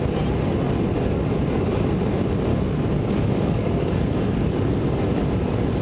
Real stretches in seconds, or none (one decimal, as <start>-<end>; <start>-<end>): 0.0-2.5; 4.7-5.8